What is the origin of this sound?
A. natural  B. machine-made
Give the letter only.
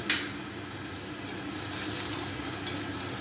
A